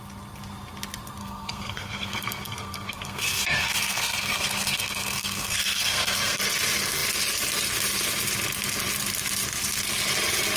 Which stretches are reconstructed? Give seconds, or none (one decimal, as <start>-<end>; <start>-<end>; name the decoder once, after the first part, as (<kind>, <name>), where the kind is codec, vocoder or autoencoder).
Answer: 1.2-6.4 (codec, SNAC)